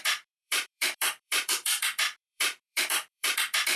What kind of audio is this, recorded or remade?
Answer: remade